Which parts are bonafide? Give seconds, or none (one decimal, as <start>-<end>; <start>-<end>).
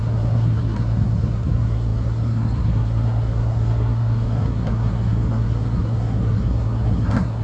none